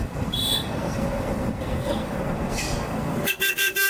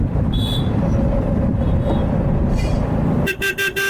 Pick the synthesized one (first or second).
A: first